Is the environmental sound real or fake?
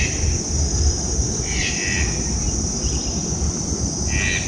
real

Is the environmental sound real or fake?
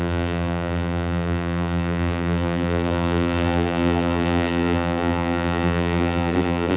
fake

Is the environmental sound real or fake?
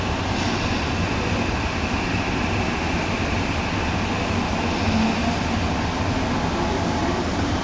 real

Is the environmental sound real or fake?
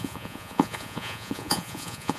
fake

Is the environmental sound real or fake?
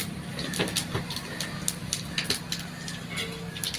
real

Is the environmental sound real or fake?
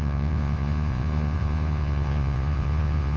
fake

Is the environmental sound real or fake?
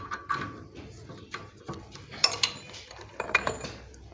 fake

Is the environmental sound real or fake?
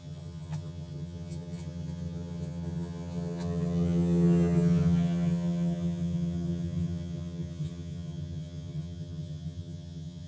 fake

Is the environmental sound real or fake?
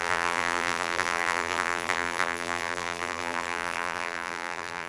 fake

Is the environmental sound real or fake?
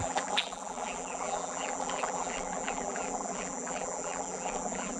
fake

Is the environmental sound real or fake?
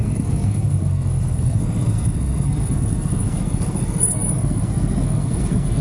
fake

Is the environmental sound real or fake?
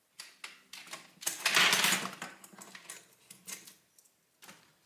real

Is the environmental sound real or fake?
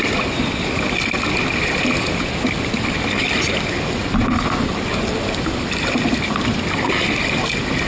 real